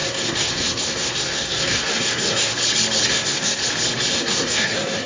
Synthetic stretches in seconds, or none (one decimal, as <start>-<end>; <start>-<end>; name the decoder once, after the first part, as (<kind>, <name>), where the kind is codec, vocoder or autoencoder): 0.0-2.5 (codec, SNAC); 3.1-3.6; 4.1-5.1